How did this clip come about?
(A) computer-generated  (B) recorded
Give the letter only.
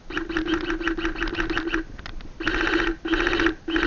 B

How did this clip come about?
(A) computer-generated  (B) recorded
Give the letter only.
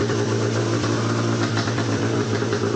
A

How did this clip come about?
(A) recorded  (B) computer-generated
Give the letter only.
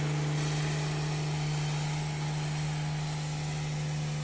A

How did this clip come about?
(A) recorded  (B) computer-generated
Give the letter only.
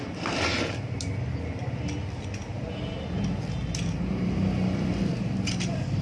A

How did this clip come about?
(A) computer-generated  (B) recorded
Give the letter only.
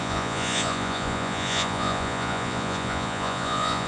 A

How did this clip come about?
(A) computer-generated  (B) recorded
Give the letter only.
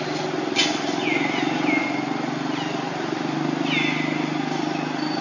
B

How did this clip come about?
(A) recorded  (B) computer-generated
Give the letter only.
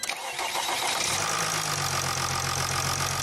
A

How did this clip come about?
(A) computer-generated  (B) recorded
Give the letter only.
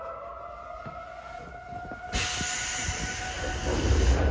B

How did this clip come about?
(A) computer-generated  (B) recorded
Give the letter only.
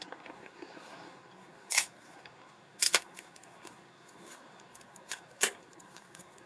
A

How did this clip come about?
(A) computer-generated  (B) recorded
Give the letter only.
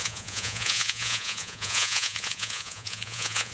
A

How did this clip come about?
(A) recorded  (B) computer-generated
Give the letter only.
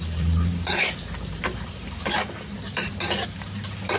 B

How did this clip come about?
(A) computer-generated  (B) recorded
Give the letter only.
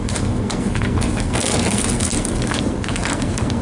A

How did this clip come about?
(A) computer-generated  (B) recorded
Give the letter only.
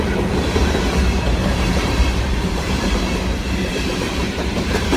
A